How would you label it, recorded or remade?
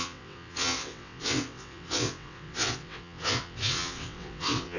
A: remade